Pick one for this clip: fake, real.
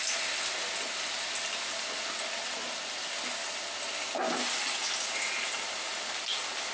real